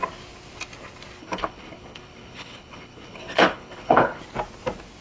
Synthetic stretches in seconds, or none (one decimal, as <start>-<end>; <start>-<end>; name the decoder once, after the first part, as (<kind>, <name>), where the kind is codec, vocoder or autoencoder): 1.2-4.2 (codec, HILCodec)